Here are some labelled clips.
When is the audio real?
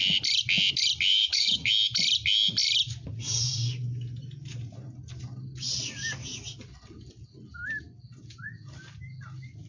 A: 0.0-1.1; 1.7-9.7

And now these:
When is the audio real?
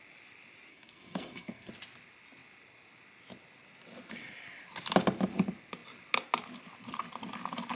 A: 0.0-0.7; 1.7-7.7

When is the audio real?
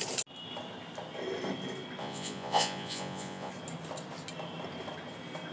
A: 0.0-2.0; 3.5-5.5